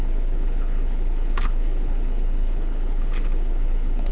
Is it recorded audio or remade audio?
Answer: remade